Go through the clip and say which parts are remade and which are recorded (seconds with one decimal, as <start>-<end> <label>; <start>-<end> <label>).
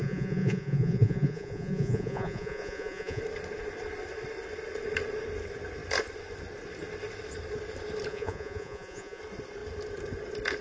0.0-3.2 remade; 3.2-8.1 recorded; 8.1-9.2 remade; 9.2-10.6 recorded